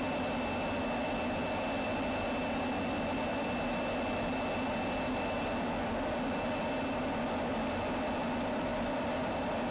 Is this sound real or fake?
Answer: real